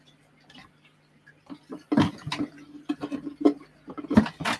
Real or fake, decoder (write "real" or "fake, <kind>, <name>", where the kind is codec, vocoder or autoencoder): real